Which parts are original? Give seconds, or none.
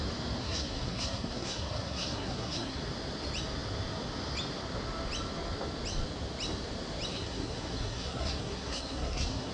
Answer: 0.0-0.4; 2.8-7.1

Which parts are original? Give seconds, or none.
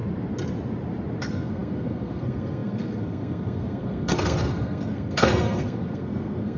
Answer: 0.0-1.2